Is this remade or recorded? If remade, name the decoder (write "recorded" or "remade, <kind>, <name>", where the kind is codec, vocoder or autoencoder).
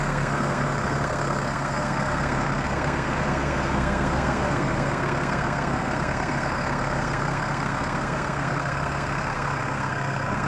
remade, codec, SNAC